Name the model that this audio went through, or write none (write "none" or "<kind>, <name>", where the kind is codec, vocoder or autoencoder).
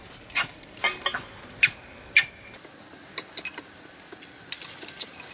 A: none